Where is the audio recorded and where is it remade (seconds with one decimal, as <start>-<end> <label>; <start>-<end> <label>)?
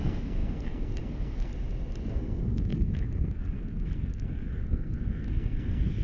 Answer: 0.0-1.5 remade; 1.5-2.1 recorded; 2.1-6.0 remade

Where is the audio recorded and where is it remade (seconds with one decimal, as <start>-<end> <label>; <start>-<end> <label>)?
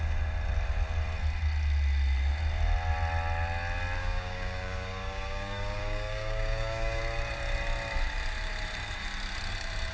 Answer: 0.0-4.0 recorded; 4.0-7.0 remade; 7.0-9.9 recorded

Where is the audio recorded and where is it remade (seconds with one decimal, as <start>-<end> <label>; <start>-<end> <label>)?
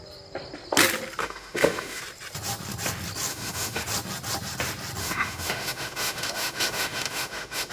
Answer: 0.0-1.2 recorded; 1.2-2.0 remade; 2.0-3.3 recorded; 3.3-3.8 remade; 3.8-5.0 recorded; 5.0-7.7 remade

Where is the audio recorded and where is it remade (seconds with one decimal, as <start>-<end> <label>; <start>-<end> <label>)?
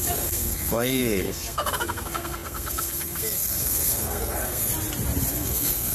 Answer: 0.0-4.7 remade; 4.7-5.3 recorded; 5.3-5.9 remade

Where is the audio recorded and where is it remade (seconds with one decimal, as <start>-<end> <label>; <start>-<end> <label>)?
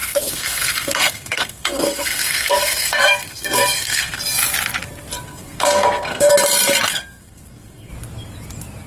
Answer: 0.0-4.2 remade; 4.2-5.3 recorded; 5.3-6.3 remade; 6.3-6.9 recorded; 6.9-7.9 remade; 7.9-8.9 recorded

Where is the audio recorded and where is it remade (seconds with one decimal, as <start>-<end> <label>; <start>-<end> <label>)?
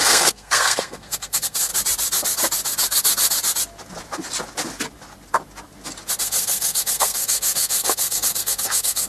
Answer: 0.0-1.7 remade; 1.7-6.2 recorded; 6.2-9.1 remade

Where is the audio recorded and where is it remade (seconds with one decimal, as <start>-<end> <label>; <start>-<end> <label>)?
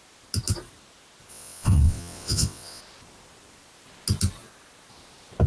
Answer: 0.0-1.3 recorded; 1.3-2.8 remade; 2.8-5.5 recorded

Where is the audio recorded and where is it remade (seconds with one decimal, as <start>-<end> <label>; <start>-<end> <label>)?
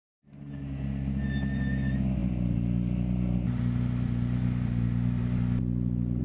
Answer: 0.0-6.2 recorded